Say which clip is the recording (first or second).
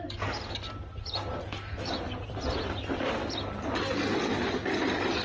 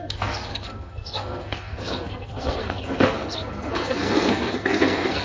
first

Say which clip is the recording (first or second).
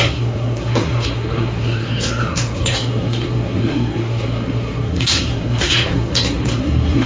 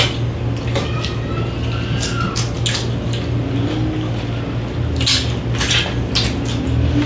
second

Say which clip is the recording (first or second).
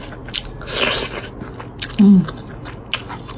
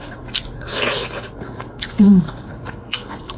first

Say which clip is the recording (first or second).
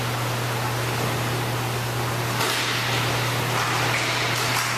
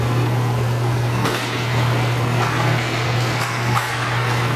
first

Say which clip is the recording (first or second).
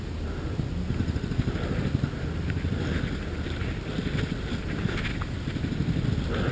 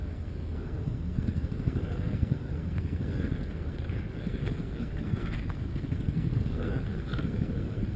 first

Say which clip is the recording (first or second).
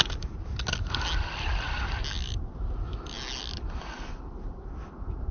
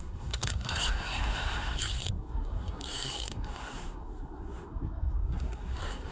first